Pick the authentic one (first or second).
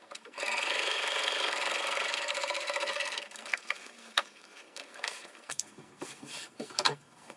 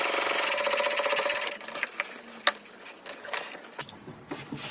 second